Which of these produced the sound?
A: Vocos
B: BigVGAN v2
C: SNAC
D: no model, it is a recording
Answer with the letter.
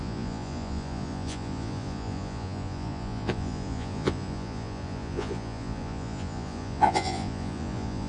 A